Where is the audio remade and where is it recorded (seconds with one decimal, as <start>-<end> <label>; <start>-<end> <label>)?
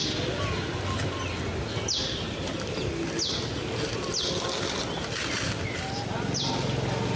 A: 0.0-7.2 recorded